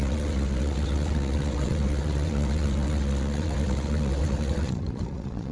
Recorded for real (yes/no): no